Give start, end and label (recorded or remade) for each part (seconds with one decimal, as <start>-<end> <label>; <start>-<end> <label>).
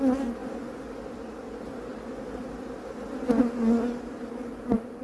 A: 0.0-5.0 recorded